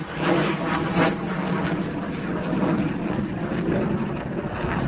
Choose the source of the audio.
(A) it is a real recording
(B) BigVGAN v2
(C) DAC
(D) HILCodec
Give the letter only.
A